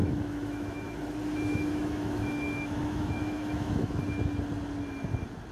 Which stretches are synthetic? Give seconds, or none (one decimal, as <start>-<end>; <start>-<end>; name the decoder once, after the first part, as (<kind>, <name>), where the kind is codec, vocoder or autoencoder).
0.0-1.0 (autoencoder, DAC-VAE); 1.5-4.0